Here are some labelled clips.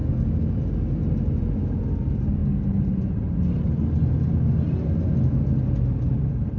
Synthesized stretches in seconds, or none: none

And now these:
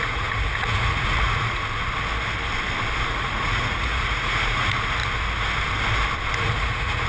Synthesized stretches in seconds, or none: 0.0-1.6 (vocoder, Vocos); 3.1-5.0; 6.4-7.1

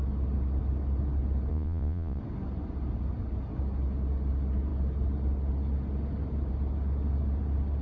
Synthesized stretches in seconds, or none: 1.5-2.2 (vocoder, Vocos)

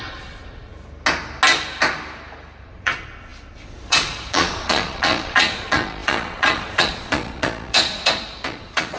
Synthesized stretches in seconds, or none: 0.0-0.7 (vocoder, Vocos); 2.6-9.0

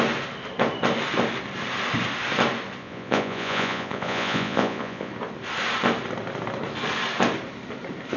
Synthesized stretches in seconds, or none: 2.8-5.1 (vocoder, Vocos)